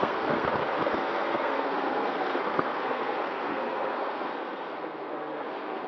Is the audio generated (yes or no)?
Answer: yes